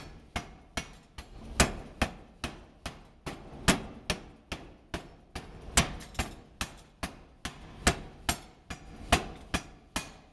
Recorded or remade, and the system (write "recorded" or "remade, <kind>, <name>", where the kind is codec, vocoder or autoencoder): recorded